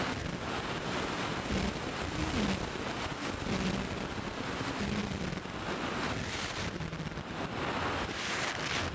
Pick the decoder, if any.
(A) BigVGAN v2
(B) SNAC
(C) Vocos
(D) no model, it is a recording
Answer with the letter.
D